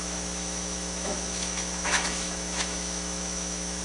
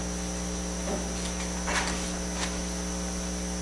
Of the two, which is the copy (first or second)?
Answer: first